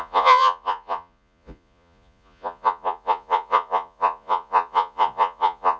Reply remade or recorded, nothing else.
remade